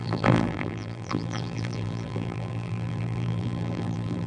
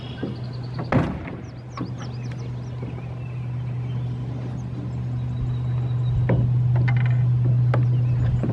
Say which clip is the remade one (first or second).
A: first